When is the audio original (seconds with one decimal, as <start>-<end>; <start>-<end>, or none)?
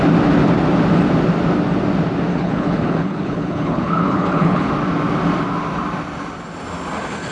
0.0-2.3; 4.7-7.3